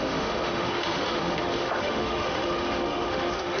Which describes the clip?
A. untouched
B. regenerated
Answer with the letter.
B